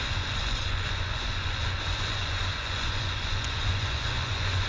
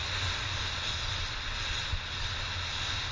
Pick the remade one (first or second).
first